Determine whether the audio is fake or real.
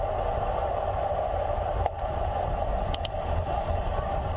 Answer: fake